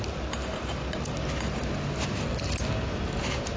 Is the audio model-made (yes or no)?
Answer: no